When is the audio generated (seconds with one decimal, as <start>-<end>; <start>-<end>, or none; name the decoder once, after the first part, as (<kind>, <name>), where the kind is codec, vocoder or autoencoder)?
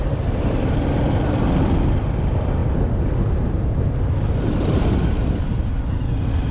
none